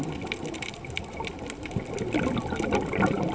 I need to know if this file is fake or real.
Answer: real